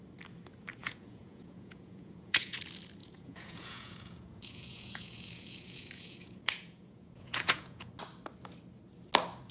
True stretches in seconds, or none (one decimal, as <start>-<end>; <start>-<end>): 0.0-0.8; 2.6-3.0; 7.9-9.5